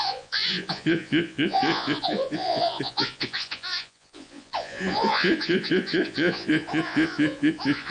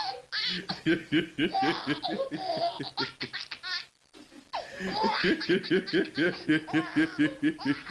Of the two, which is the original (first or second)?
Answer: second